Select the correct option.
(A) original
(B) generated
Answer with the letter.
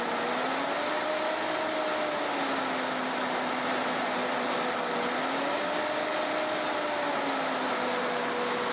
A